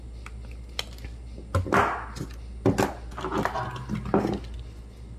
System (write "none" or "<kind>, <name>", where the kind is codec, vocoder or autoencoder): none